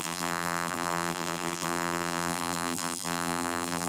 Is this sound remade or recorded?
remade